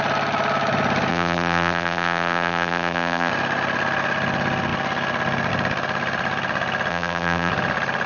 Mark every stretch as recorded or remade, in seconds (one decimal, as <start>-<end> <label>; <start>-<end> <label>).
0.0-1.1 recorded; 1.1-3.3 remade; 3.3-6.9 recorded; 6.9-7.5 remade; 7.5-8.1 recorded